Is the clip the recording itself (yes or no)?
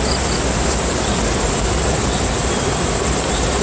yes